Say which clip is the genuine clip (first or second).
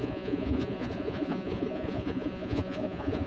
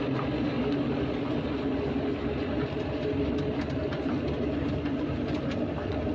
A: second